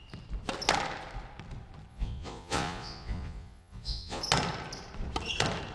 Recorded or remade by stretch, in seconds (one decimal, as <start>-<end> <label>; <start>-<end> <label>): 0.0-1.9 recorded; 1.9-4.2 remade; 4.2-5.7 recorded